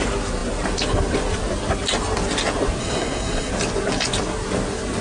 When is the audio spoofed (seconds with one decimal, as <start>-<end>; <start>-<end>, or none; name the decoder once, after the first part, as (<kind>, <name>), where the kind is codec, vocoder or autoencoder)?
2.8-3.5 (codec, SNAC)